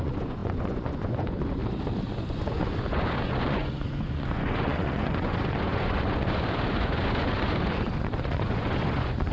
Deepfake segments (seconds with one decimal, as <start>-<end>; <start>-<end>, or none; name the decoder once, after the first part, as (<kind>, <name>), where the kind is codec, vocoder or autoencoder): 0.0-1.6 (vocoder, Vocos); 2.1-9.3